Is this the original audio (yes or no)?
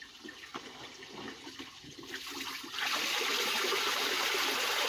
yes